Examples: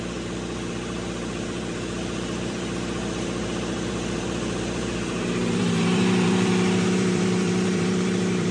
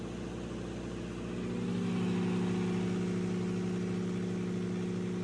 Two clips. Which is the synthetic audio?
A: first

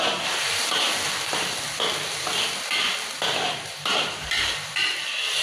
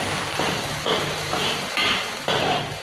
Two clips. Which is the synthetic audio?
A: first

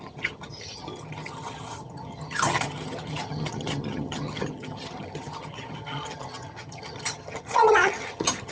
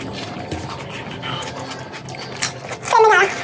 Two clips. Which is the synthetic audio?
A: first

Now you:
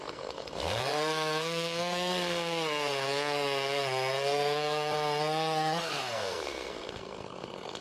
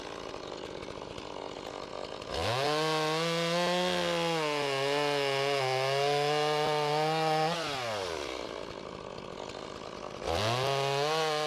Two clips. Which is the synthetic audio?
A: first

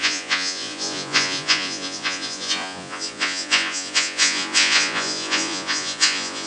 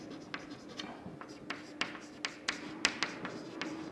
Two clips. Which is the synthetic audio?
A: first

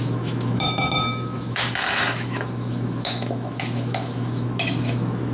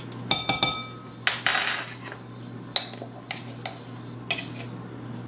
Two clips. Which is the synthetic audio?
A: first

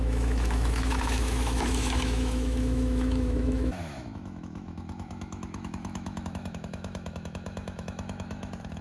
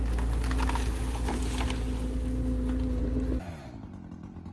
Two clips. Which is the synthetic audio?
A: first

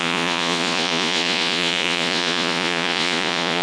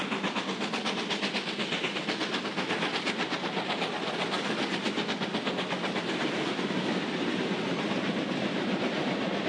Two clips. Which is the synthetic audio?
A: first